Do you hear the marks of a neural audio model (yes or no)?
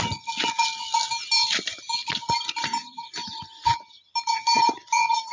no